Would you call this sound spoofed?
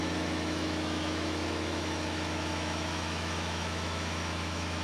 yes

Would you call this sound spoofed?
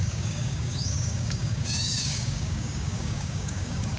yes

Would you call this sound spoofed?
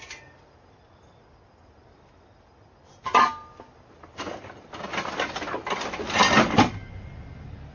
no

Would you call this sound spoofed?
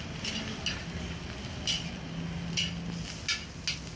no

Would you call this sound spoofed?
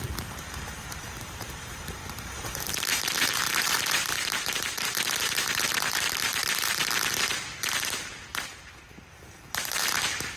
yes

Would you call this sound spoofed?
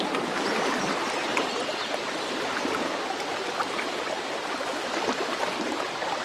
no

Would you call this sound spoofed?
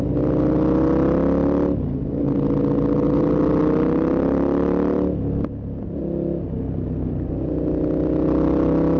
no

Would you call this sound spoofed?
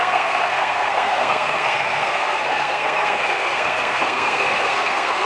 yes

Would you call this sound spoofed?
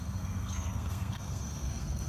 yes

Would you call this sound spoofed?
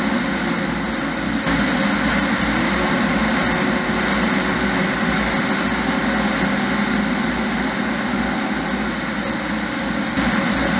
no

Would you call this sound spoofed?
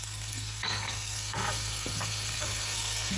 yes